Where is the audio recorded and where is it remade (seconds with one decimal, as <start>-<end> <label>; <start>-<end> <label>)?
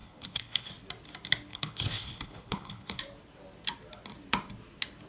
0.0-0.7 remade; 0.7-1.5 recorded; 1.5-3.0 remade; 3.0-5.1 recorded